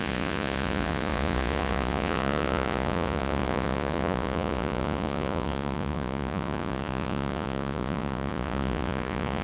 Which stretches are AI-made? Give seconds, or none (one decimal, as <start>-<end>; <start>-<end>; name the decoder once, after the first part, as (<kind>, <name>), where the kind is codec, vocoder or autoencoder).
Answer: 0.0-9.4 (vocoder, Vocos)

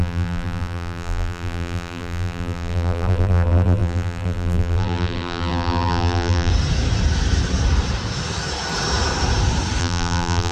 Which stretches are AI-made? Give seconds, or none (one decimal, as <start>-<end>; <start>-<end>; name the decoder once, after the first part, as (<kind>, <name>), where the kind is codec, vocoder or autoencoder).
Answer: 0.0-6.5 (vocoder, BigVGAN v2); 9.8-10.5

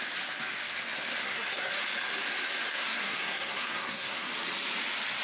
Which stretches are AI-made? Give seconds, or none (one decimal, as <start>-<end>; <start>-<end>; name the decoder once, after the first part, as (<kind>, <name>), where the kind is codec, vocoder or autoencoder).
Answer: 1.2-1.7 (codec, SNAC); 2.7-4.3

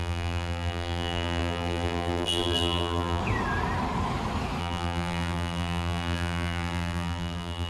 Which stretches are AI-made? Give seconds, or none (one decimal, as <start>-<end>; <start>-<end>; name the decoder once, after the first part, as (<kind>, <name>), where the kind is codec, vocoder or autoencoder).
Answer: 0.0-3.2 (vocoder, BigVGAN v2); 4.6-7.7

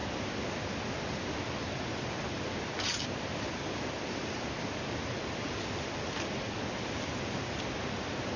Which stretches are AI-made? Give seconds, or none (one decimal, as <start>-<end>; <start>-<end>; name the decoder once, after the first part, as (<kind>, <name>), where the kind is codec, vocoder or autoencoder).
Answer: none

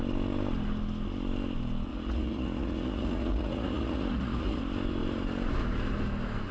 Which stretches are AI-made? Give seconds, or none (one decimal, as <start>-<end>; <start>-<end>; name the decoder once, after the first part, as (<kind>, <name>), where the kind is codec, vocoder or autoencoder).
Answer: 1.9-4.6 (vocoder, Vocos)

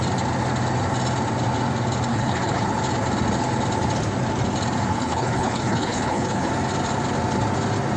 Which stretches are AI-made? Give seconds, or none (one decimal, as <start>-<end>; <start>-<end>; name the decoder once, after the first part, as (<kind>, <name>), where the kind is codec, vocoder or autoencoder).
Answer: 2.1-2.7 (codec, HILCodec); 4.9-6.5